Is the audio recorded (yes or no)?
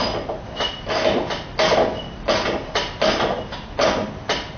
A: yes